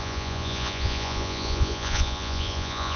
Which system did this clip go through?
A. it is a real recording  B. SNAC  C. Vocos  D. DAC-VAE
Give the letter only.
C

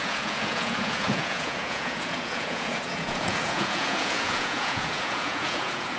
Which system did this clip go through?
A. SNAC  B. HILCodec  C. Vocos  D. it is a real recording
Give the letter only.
C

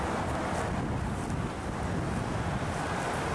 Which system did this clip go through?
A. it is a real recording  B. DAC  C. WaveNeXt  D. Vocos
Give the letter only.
A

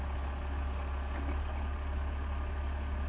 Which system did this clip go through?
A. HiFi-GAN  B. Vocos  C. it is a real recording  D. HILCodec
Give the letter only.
C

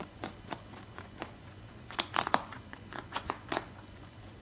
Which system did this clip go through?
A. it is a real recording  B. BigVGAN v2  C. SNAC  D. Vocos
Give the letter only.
D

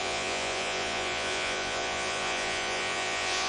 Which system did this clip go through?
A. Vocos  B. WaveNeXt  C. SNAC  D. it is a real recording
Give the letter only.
A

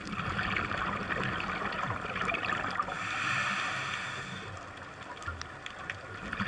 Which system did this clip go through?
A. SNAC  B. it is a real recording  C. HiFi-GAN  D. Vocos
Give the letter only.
B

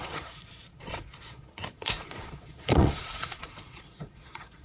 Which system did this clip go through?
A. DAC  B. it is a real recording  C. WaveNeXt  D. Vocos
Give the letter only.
D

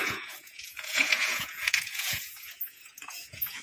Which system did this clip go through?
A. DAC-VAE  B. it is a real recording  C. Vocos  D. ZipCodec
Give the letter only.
C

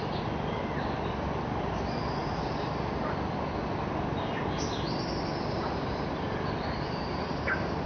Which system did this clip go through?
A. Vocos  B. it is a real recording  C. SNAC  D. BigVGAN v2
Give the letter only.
B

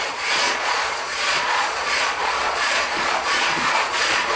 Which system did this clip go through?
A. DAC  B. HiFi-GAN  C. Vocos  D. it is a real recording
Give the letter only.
C